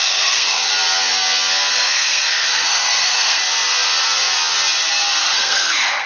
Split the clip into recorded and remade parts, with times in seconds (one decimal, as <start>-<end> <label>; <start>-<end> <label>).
0.0-0.7 remade; 0.7-1.7 recorded; 1.7-3.4 remade; 3.4-5.2 recorded; 5.2-6.1 remade

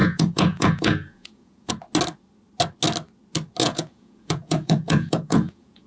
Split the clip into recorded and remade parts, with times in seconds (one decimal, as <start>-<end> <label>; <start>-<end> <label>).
0.0-1.7 remade; 1.7-3.6 recorded; 3.6-5.9 remade